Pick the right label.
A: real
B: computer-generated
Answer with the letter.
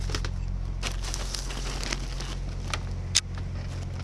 A